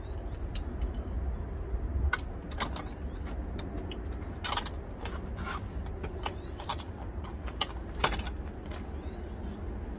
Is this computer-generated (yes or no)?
no